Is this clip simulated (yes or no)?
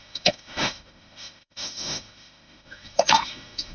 yes